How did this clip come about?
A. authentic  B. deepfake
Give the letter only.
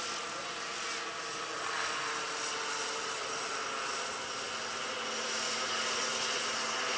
A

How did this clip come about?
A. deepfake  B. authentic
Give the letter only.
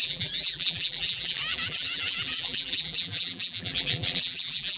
A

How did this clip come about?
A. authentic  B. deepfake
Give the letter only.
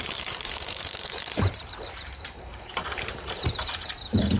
B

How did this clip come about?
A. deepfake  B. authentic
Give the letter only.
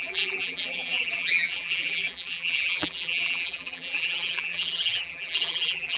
A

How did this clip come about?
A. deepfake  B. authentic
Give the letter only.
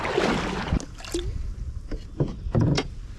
B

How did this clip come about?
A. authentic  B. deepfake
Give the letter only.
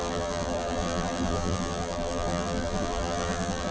B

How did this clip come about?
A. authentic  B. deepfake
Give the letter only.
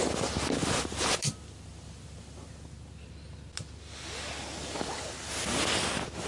A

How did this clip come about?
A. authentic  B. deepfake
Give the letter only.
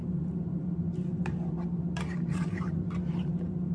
B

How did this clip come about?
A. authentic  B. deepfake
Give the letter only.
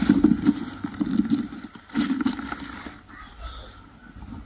A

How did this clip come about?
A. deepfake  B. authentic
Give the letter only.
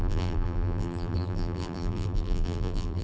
A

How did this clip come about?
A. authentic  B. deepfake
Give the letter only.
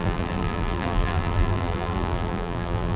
B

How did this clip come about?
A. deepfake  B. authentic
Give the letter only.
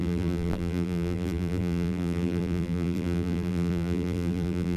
A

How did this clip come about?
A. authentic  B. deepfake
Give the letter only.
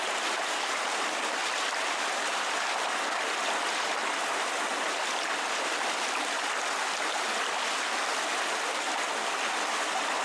A